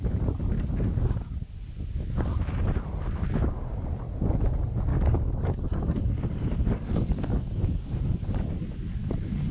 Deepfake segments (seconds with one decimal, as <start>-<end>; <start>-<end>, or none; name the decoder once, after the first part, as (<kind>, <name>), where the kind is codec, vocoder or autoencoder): 4.9-8.5 (codec, DAC)